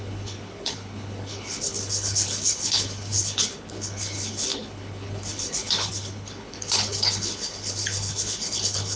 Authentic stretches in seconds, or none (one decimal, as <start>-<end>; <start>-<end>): none